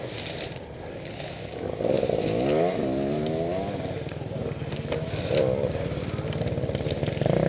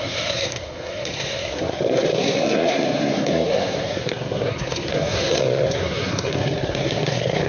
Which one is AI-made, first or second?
second